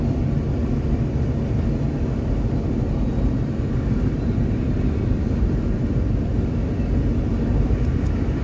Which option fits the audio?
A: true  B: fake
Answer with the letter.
A